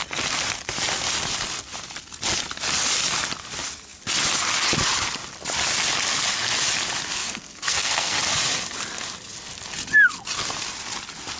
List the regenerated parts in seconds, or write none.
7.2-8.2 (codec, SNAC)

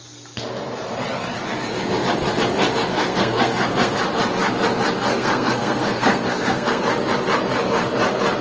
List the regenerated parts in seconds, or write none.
2.9-4.0 (codec, SNAC); 5.1-6.8